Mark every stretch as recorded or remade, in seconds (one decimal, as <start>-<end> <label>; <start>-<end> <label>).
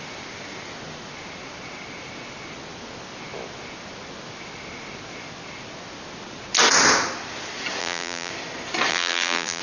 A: 0.0-7.8 recorded; 7.8-8.3 remade; 8.3-8.9 recorded; 8.9-9.6 remade